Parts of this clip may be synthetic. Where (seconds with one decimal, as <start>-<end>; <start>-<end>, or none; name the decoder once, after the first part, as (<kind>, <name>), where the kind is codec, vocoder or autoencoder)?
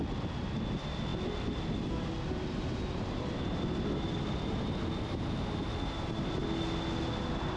none